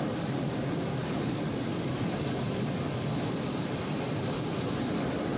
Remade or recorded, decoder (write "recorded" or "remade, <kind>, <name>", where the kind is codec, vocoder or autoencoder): recorded